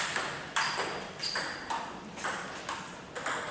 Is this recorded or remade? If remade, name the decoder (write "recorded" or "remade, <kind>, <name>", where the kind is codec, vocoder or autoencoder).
remade, vocoder, BigVGAN v2